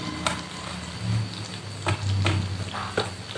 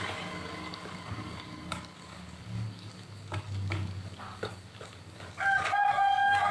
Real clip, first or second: first